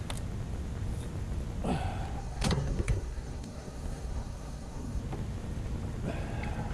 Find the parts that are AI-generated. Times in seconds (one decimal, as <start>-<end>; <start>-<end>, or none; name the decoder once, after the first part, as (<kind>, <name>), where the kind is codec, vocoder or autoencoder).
2.2-5.0 (codec, SNAC)